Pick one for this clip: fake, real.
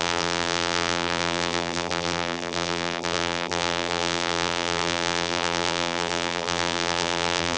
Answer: fake